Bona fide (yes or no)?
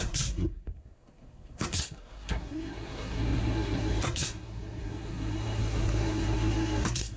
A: no